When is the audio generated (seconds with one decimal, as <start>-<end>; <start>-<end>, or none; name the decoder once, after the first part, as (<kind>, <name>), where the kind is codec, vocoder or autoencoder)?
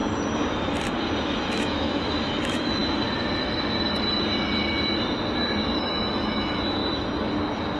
1.2-2.8 (autoencoder, DAC-VAE); 5.8-6.8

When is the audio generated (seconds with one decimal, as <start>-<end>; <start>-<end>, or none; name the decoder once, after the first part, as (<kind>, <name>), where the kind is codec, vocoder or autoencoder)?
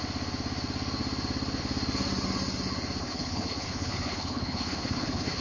3.0-5.4 (codec, HILCodec)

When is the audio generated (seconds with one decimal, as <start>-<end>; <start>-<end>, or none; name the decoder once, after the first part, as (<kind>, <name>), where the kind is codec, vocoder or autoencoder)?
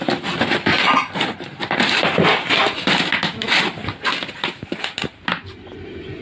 none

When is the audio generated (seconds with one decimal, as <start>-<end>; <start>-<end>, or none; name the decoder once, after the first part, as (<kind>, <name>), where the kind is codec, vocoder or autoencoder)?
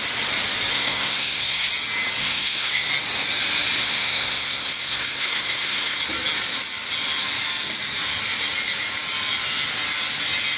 0.7-1.7 (codec, SNAC); 2.2-2.9; 3.8-6.0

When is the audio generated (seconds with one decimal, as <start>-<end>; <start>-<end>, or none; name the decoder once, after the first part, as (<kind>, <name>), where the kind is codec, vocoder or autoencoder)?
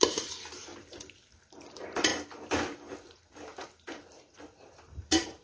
0.0-0.7 (vocoder, BigVGAN v2); 1.3-2.1; 2.9-5.4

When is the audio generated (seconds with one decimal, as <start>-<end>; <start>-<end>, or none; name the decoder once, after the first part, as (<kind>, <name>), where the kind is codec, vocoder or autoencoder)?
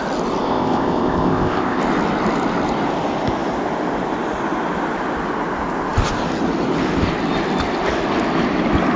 0.4-1.8 (codec, ZipCodec)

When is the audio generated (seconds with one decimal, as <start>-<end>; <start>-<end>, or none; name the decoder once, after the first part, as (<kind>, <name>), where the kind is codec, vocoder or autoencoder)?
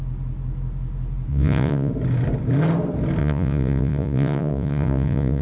1.3-1.9 (vocoder, Vocos); 3.2-5.4